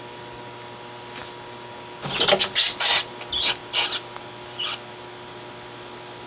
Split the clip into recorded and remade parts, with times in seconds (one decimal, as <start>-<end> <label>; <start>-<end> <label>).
0.0-6.3 recorded